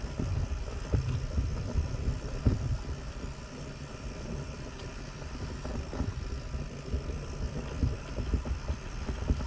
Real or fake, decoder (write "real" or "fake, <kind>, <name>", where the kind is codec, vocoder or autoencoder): real